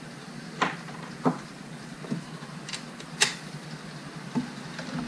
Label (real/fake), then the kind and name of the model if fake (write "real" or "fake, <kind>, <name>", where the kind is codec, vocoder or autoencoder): real